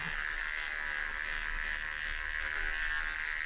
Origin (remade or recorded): recorded